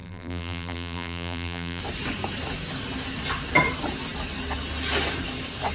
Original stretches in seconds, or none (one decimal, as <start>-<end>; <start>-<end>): 1.8-5.7